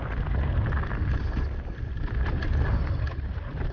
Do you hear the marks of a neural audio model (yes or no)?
no